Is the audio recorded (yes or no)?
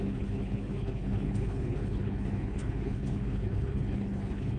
no